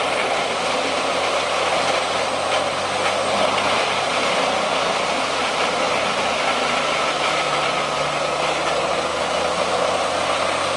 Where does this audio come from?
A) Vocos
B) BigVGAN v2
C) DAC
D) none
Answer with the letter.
D